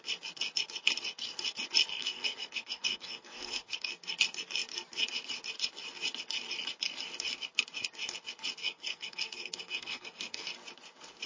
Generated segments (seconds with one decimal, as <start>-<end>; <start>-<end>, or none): 1.9-3.9; 8.6-10.5